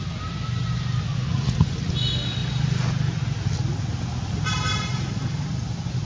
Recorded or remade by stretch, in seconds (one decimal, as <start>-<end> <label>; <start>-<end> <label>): 0.0-1.1 recorded; 1.1-1.9 remade; 1.9-6.0 recorded